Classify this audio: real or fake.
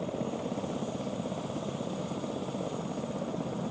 real